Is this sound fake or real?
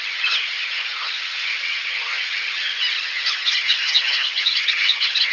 fake